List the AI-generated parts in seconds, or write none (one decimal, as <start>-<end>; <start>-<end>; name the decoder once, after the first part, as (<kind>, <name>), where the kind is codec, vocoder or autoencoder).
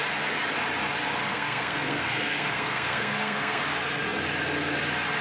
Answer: 1.3-3.6 (codec, SNAC)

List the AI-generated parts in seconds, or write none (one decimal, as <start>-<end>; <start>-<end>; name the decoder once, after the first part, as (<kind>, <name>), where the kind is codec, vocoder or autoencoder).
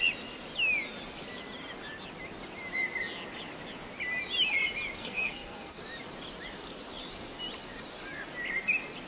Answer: 5.0-5.8 (codec, SNAC)